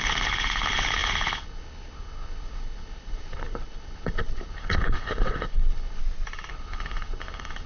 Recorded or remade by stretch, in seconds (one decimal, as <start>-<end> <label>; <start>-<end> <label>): 0.0-6.0 remade; 6.0-6.5 recorded; 6.5-7.7 remade

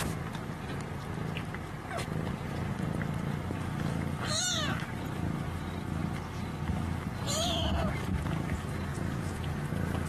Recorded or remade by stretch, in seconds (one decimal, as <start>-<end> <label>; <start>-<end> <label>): 0.0-8.9 recorded; 8.9-9.6 remade; 9.6-10.1 recorded

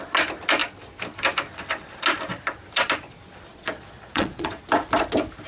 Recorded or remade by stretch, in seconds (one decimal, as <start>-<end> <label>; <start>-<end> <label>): 0.0-3.5 recorded; 3.5-4.6 remade; 4.6-5.5 recorded

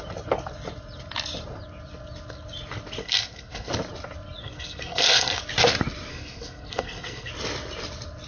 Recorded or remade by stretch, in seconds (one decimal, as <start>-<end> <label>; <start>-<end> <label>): 0.0-3.0 recorded; 3.0-3.7 remade; 3.7-4.4 recorded; 4.4-5.4 remade; 5.4-6.1 recorded; 6.1-7.3 remade; 7.3-8.3 recorded